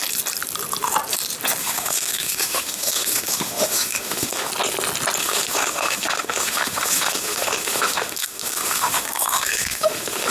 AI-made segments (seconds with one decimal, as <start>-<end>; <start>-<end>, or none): 1.6-4.5; 5.2-10.3